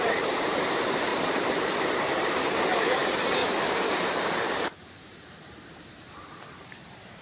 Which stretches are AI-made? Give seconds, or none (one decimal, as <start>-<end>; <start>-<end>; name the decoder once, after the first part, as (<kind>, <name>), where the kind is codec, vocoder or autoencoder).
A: 0.0-3.4 (vocoder, BigVGAN v2); 3.9-7.2